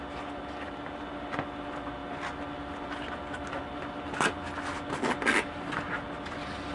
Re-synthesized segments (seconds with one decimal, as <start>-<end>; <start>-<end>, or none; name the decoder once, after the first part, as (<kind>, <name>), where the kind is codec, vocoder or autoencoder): none